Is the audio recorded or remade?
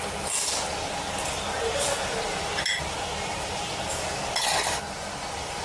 recorded